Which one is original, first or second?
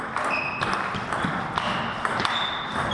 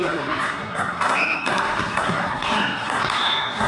first